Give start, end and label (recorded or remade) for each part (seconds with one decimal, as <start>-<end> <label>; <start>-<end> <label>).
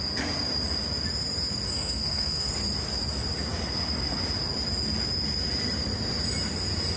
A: 0.0-1.7 recorded; 1.7-2.5 remade; 2.5-7.0 recorded